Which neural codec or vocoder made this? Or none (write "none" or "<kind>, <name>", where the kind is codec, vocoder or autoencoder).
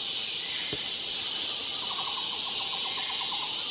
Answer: none